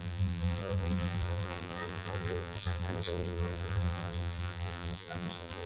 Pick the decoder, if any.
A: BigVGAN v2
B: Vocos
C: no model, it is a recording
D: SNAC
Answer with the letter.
A